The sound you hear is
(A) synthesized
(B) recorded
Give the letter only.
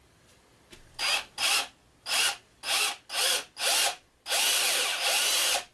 B